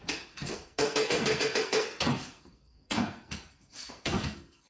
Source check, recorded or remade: remade